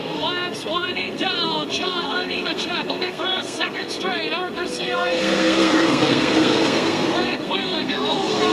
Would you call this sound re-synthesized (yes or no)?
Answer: yes